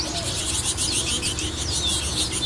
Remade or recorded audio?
recorded